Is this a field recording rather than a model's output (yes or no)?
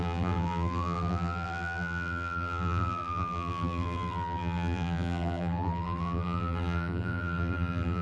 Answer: no